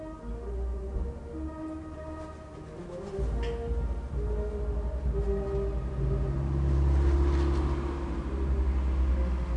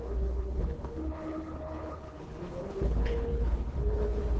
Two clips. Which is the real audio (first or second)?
first